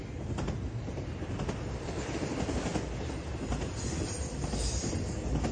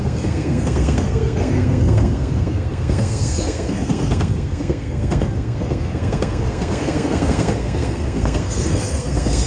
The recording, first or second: first